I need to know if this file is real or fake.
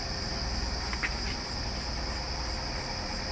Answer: real